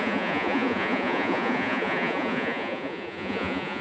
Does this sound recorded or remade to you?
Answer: remade